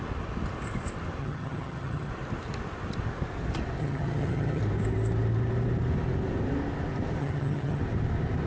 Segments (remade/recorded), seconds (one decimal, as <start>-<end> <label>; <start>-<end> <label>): 0.0-1.2 recorded; 1.2-2.1 remade; 2.1-3.8 recorded; 3.8-4.6 remade; 4.6-7.2 recorded; 7.2-7.8 remade; 7.8-8.5 recorded